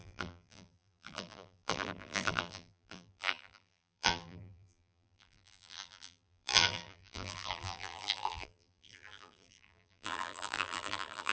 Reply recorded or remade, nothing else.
remade